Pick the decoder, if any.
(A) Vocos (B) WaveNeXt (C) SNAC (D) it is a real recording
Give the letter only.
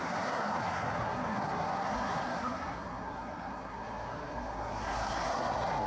C